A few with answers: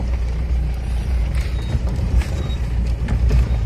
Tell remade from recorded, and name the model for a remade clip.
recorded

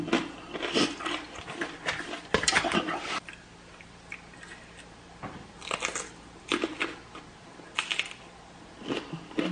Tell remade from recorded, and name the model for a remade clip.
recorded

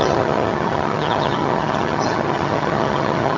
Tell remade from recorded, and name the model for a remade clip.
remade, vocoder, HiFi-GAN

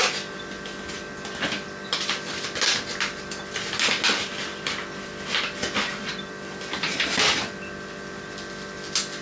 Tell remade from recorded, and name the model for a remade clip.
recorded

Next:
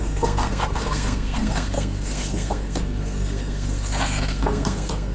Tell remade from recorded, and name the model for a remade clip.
remade, codec, SNAC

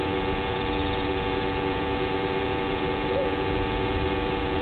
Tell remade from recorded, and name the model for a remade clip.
remade, vocoder, Vocos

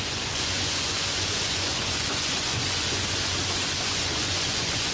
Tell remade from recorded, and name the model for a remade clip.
remade, vocoder, Vocos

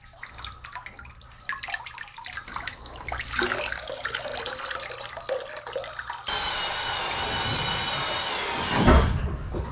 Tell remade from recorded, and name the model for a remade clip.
recorded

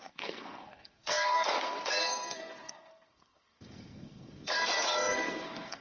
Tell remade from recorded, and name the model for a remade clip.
remade, codec, SNAC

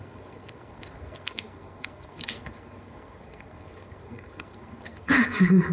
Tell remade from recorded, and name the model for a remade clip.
remade, codec, SNAC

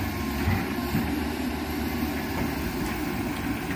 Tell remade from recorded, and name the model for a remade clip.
recorded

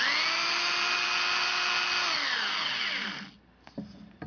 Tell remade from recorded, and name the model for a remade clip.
recorded